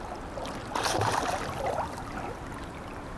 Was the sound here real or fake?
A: real